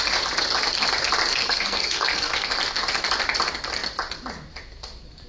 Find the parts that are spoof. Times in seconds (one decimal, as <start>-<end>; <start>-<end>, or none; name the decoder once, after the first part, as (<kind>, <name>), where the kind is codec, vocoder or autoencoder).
1.3-2.6 (codec, SNAC)